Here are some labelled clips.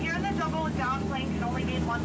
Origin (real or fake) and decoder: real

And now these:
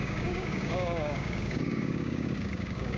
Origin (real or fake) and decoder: fake, codec, DAC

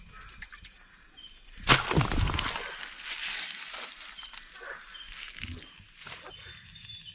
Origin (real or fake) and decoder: real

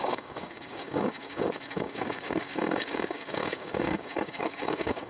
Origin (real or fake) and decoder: fake, codec, DAC